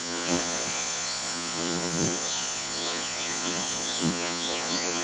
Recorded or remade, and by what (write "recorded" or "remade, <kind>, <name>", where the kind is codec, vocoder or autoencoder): remade, vocoder, Vocos